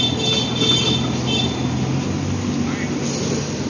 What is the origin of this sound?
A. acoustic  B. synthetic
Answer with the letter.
A